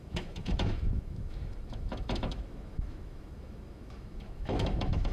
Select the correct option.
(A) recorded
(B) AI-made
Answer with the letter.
B